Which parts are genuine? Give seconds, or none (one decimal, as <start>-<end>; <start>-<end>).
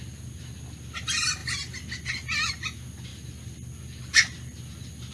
0.0-5.1